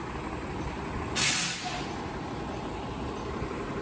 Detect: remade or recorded recorded